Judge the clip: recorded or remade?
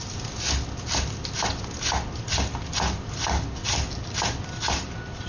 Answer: recorded